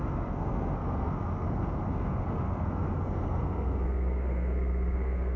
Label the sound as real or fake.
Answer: fake